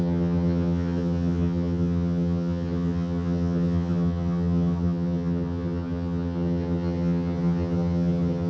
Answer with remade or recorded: remade